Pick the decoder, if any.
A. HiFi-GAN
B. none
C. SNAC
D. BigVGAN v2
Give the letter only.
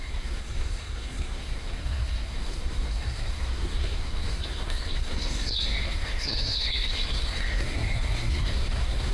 C